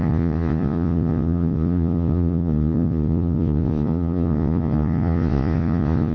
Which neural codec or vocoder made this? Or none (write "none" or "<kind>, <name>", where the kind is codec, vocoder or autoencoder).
vocoder, Vocos